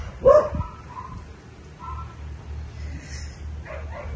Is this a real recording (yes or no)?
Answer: yes